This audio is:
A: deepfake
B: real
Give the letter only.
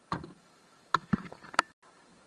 B